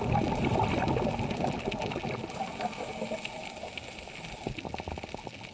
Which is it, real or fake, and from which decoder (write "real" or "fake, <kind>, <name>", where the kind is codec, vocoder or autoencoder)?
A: real